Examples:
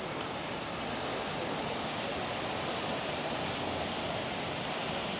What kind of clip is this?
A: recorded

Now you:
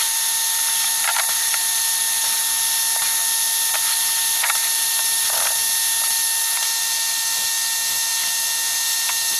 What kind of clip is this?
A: recorded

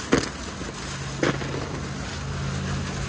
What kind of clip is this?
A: recorded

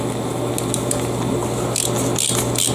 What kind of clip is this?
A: recorded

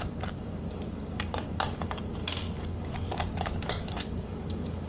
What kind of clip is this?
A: remade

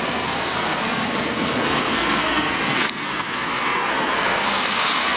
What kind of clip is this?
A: remade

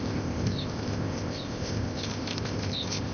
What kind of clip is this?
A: remade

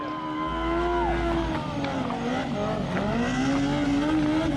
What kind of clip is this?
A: recorded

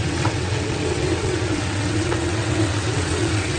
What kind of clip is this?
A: remade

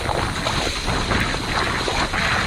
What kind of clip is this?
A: recorded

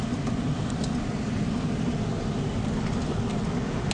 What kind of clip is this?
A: recorded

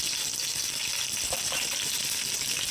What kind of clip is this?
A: recorded